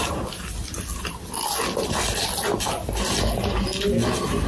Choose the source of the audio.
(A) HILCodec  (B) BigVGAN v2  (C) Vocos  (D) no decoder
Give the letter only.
D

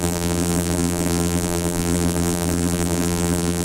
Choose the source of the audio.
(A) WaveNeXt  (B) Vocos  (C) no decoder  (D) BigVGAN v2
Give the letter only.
D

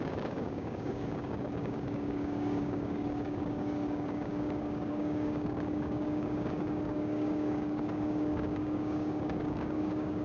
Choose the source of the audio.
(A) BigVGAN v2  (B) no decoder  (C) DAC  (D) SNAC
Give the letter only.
C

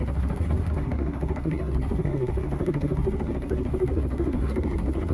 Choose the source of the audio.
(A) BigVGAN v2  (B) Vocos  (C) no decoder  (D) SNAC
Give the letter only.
D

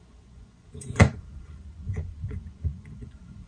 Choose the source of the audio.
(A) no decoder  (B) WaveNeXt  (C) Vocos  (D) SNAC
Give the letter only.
C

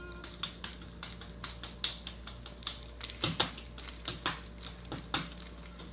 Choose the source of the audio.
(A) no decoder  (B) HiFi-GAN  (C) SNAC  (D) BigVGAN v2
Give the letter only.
A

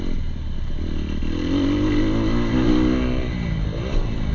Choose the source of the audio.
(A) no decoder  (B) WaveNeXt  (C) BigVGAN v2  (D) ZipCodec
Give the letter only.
A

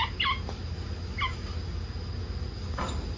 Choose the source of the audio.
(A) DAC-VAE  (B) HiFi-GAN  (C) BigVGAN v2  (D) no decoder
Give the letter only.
D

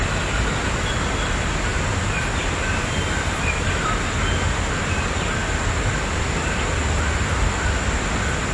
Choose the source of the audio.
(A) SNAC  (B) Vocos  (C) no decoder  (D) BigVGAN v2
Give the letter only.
C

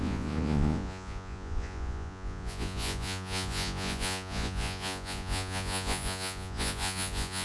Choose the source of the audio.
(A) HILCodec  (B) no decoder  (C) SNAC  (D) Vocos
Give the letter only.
D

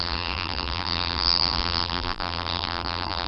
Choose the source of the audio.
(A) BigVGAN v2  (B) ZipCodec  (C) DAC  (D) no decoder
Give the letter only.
A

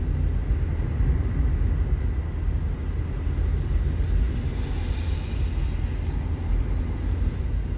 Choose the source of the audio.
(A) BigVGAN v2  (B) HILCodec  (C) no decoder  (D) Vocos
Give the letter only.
C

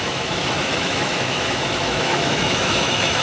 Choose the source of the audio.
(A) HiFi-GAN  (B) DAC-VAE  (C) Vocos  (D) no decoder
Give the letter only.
B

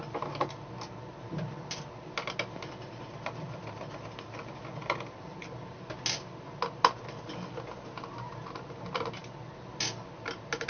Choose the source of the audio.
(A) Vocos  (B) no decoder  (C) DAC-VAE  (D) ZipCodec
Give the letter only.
B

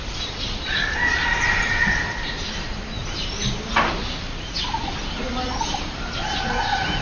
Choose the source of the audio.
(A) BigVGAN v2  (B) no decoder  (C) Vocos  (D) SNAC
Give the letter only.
B